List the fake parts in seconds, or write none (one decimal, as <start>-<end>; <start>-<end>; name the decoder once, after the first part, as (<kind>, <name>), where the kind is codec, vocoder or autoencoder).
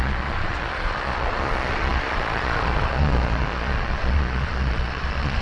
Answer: 0.0-5.4 (vocoder, Vocos)